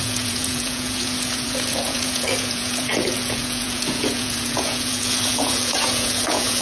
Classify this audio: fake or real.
fake